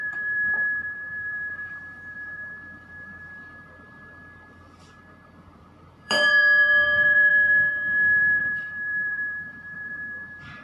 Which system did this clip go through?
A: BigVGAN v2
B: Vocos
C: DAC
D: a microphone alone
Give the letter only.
A